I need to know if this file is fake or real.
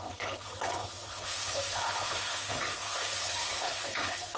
fake